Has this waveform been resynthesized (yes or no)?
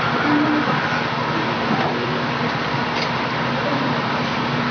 no